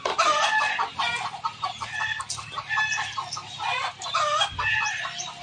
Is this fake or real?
real